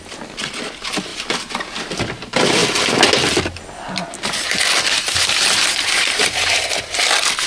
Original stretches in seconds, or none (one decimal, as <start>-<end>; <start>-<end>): 0.0-7.5